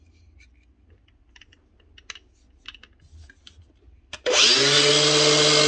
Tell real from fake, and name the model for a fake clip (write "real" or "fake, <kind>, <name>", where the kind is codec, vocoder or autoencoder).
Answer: real